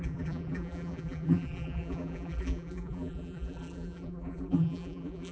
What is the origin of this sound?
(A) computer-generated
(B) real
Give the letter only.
A